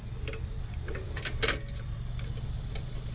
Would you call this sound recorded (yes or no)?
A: yes